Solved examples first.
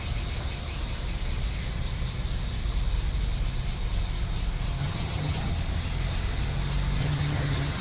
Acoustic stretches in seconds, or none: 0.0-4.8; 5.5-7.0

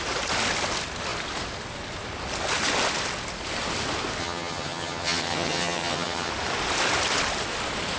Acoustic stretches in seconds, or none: 0.0-4.2; 6.3-8.0

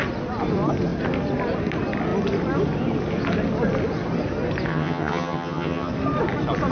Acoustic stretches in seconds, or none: 0.0-4.7; 5.9-6.7

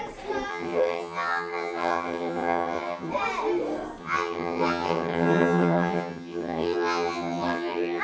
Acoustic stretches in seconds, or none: 0.0-0.5; 3.1-4.0